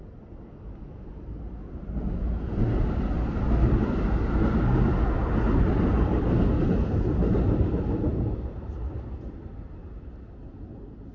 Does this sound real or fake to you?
real